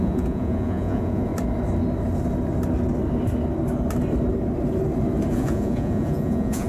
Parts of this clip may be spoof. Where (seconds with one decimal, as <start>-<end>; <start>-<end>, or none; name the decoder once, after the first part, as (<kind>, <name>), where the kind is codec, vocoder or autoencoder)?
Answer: 0.0-1.3 (vocoder, Vocos); 5.3-6.7